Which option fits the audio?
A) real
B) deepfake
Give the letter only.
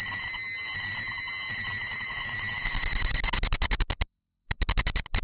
A